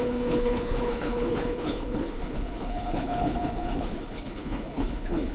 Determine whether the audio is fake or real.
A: fake